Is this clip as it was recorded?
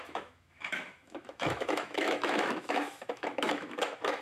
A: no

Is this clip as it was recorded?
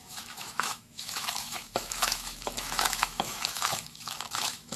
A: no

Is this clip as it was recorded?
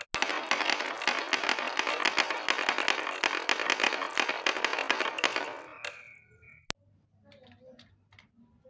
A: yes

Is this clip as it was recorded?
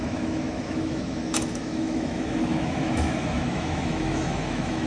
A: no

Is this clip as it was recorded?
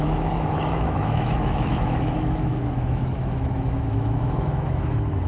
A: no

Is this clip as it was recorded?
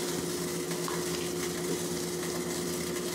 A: yes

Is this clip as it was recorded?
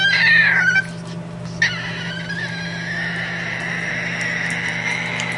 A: yes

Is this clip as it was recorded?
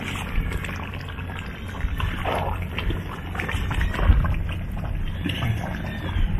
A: yes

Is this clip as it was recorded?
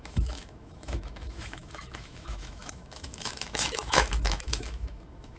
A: no